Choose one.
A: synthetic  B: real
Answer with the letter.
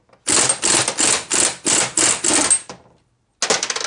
B